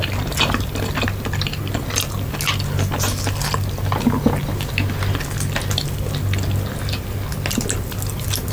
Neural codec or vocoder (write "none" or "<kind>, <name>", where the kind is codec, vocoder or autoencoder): none